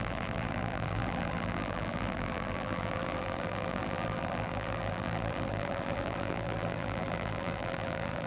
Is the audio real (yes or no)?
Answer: no